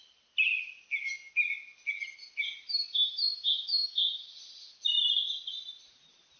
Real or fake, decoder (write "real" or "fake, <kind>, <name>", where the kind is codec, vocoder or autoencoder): real